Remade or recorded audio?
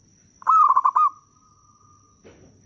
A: recorded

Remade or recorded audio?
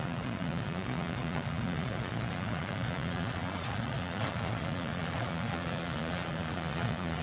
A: remade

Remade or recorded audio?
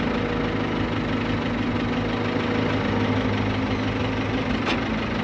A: recorded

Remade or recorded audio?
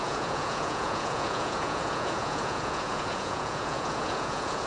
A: remade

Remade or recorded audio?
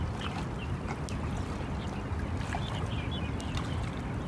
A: recorded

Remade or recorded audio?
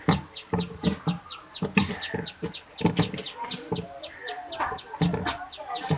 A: recorded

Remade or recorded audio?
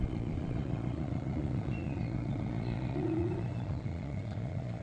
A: remade